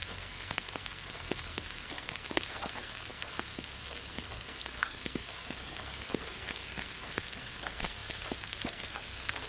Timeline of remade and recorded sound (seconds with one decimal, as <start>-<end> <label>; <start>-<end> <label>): 0.0-9.5 remade